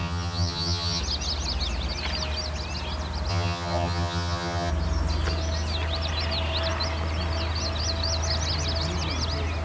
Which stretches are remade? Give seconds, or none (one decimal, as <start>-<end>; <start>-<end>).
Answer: 0.0-1.0; 3.3-4.7